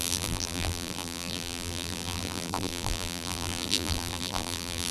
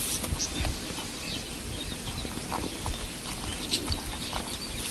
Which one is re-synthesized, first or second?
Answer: first